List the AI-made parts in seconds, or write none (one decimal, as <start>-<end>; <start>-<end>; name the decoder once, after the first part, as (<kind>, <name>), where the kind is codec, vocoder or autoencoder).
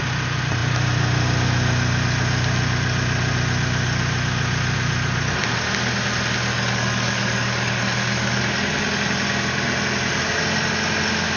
6.5-8.4 (codec, DAC)